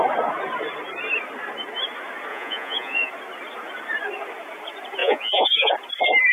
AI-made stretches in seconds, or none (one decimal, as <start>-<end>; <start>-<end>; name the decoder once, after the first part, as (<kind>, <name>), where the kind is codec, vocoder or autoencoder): 2.3-3.1 (vocoder, Vocos); 5.0-5.7